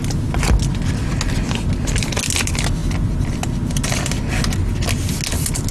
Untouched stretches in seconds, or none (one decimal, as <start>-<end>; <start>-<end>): 0.0-5.7